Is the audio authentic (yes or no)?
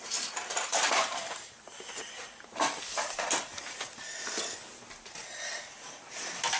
yes